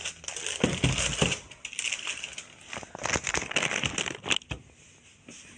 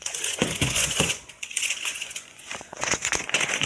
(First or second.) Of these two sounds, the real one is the first